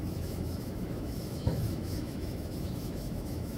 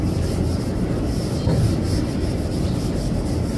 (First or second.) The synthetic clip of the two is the first